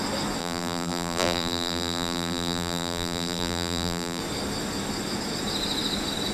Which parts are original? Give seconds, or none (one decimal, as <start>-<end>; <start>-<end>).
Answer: 0.0-0.4; 4.2-6.3